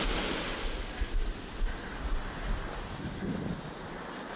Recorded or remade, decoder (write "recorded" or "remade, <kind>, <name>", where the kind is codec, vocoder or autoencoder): recorded